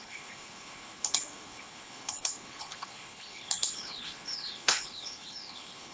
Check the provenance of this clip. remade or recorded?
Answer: remade